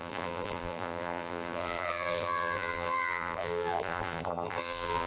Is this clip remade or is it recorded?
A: remade